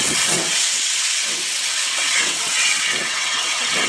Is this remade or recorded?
remade